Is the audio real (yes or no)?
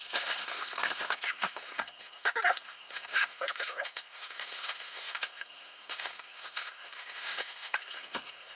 no